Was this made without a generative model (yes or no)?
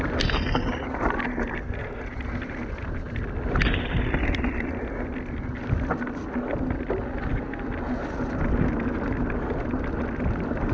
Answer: yes